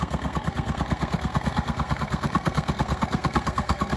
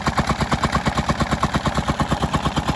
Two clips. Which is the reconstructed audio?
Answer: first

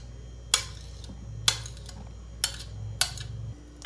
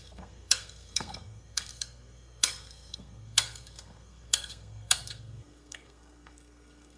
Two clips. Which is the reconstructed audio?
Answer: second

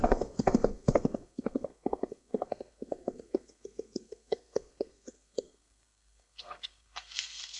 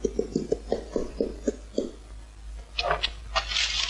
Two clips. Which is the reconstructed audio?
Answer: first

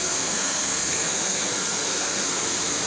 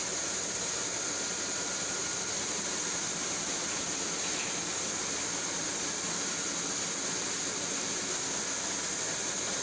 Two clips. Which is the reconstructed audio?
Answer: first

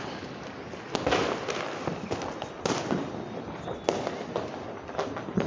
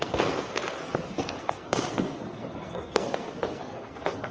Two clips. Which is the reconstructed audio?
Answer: second